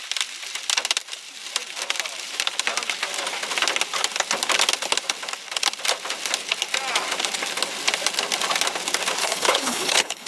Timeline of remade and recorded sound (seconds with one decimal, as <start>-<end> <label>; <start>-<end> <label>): 0.0-9.2 recorded; 9.2-10.3 remade